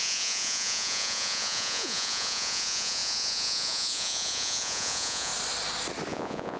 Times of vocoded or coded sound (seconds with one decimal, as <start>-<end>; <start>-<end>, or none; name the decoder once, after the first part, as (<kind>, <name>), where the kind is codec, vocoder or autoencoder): 0.0-5.3 (vocoder, Vocos); 6.1-6.6